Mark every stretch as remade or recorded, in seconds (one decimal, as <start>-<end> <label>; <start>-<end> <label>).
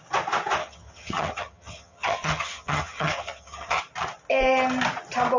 0.0-0.6 recorded; 0.6-3.8 remade; 3.8-5.4 recorded